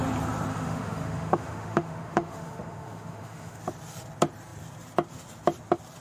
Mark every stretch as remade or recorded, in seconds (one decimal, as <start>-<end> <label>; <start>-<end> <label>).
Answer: 0.0-0.5 recorded; 0.5-3.6 remade; 3.6-6.0 recorded